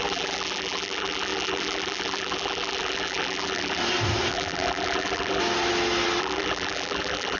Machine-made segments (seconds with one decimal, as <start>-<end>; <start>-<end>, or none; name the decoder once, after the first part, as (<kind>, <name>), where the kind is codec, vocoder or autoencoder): 0.0-3.8 (vocoder, BigVGAN v2); 4.3-5.4; 6.2-7.4